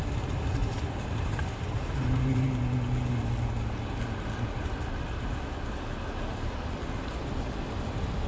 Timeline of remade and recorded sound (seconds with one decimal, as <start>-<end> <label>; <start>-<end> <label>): 0.0-0.6 recorded; 0.6-2.6 remade; 2.6-8.3 recorded